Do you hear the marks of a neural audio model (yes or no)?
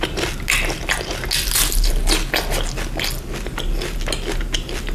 no